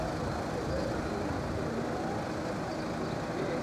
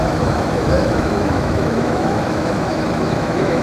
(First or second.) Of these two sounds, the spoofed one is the second